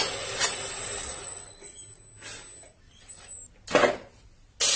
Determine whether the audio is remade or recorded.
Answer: recorded